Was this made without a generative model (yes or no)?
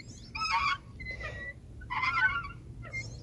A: yes